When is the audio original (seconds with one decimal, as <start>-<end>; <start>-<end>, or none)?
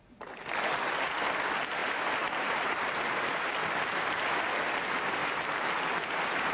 0.0-1.8; 3.5-6.5